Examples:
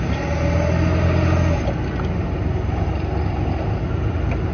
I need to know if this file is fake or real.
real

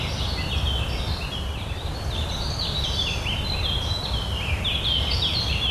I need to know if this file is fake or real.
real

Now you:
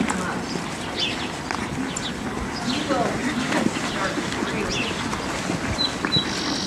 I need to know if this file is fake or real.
real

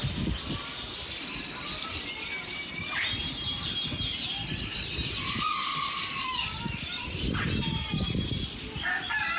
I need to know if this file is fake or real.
real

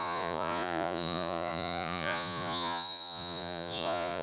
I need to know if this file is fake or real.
fake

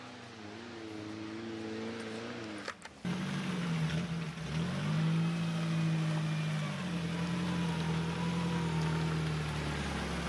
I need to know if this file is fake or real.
real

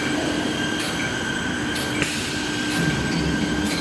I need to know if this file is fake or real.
fake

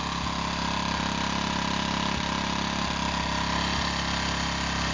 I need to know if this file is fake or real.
real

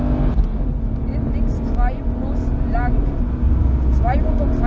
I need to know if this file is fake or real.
real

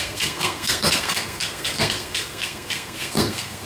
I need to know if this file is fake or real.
fake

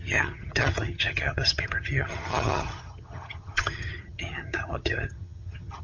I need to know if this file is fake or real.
fake